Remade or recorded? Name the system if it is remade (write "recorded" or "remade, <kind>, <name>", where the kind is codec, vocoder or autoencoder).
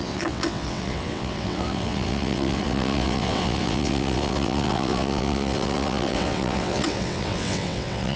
remade, vocoder, WaveNeXt